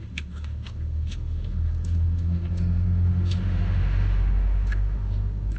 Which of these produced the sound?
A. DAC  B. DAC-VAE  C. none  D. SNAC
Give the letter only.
B